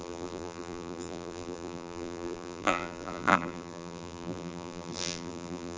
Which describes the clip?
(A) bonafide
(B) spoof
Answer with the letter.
B